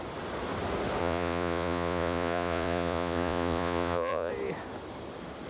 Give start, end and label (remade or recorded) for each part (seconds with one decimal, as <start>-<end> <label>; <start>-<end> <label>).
0.0-1.0 recorded; 1.0-4.3 remade; 4.3-5.5 recorded